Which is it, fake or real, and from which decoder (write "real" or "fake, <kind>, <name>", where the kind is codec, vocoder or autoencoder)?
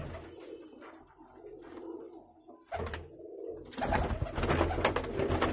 real